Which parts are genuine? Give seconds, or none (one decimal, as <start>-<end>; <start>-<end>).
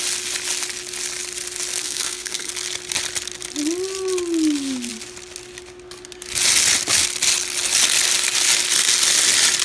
0.0-1.8; 2.5-9.6